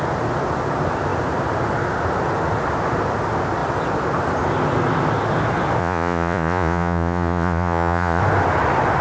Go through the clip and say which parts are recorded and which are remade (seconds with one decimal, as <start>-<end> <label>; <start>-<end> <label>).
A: 0.0-5.8 recorded; 5.8-8.2 remade; 8.2-9.0 recorded